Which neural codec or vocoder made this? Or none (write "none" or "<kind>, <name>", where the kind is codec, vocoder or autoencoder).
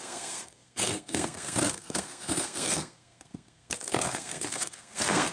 codec, SNAC